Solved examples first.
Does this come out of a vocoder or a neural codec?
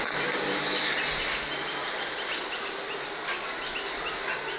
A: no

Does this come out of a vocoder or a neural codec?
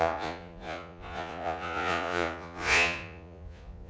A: yes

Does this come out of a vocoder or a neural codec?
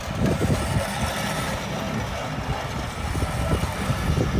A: no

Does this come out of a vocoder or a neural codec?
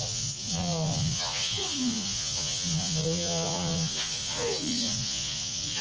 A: yes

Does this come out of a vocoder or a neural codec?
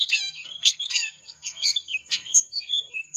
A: yes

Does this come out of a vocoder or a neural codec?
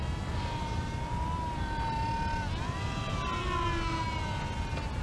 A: no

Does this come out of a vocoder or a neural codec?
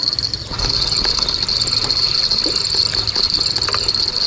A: no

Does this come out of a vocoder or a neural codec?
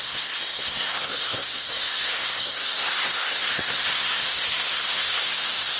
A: yes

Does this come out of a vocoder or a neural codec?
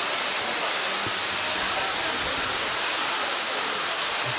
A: no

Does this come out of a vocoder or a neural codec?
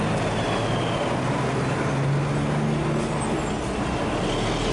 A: no